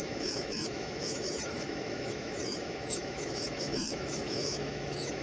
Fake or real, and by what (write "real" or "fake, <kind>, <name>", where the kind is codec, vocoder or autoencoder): fake, autoencoder, DAC-VAE